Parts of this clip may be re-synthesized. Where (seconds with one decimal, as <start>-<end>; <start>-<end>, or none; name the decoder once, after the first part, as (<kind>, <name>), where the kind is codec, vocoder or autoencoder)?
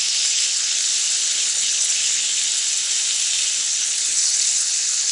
0.0-0.8 (codec, HILCodec); 1.3-2.5; 3.7-5.1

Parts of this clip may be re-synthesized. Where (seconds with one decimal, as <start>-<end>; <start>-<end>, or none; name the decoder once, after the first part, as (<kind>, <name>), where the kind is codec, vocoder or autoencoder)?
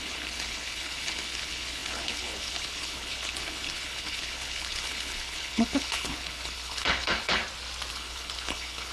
0.0-7.4 (codec, HILCodec); 7.9-8.9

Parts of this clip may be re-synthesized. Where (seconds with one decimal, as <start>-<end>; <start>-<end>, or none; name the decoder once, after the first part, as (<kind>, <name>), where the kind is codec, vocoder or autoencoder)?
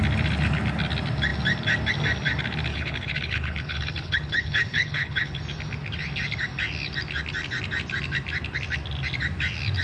2.7-5.4 (codec, HILCodec)